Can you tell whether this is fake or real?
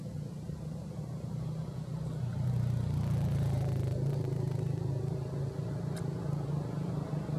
real